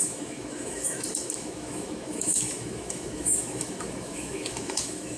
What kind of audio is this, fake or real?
fake